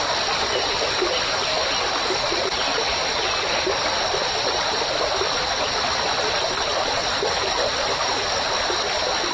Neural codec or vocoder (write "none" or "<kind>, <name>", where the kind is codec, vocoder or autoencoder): none